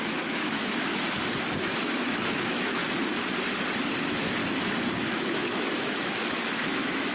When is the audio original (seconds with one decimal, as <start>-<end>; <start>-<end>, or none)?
0.9-1.7; 2.8-4.0; 4.4-5.1